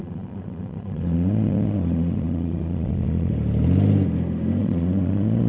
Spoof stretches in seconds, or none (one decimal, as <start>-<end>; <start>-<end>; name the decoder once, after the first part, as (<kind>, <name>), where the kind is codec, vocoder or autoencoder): 0.0-3.3 (vocoder, Vocos); 4.6-5.5